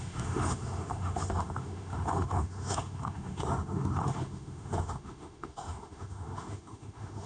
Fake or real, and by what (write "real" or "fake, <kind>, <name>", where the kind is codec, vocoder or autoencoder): fake, autoencoder, DAC-VAE